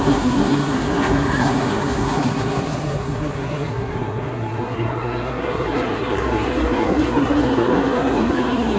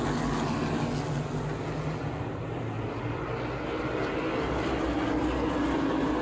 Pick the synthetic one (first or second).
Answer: first